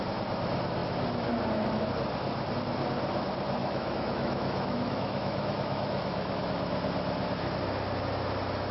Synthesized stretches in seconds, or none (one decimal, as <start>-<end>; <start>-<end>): 3.6-6.5